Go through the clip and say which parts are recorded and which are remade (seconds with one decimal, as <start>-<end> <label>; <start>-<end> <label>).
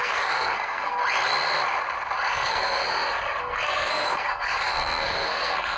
0.0-1.0 remade; 1.0-2.3 recorded; 2.3-2.8 remade; 2.8-3.4 recorded; 3.4-5.8 remade